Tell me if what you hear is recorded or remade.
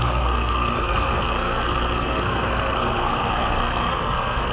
remade